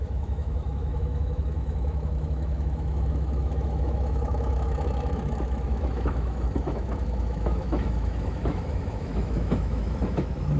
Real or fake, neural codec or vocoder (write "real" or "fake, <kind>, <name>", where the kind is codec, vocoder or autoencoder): fake, autoencoder, DAC-VAE